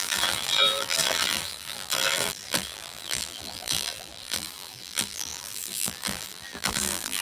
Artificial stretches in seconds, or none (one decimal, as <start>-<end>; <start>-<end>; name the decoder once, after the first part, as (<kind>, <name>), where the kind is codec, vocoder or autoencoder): 0.0-7.2 (vocoder, BigVGAN v2)